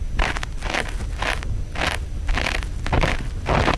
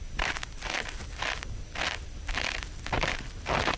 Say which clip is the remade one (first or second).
second